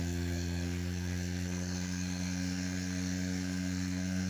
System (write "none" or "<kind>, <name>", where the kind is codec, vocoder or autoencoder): codec, SNAC